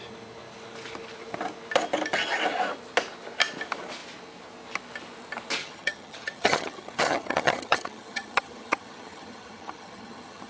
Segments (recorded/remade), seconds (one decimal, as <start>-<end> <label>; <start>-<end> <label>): 0.0-5.6 recorded; 5.6-10.5 remade